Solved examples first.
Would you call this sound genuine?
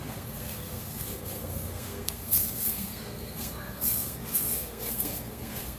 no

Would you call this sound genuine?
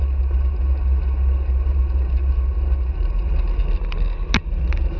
yes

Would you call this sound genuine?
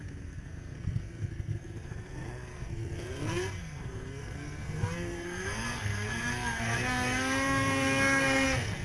no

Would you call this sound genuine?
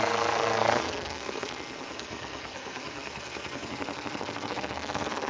no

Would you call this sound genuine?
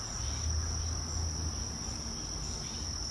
yes